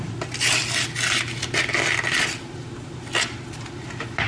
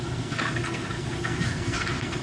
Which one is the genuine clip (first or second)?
first